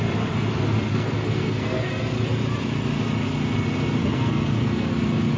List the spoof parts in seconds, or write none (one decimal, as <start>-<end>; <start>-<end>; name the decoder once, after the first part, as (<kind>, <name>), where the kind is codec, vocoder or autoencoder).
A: 0.9-1.9 (codec, SNAC); 4.0-4.9